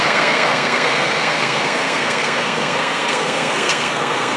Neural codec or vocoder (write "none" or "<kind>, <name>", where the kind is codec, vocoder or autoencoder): codec, SNAC